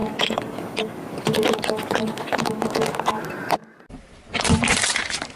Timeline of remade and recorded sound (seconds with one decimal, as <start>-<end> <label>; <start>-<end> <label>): 0.0-3.2 remade; 3.2-5.4 recorded